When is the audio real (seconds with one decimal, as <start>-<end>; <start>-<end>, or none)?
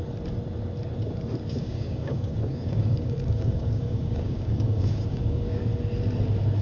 0.0-1.6; 5.6-6.6